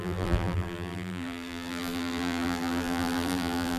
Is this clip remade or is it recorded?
remade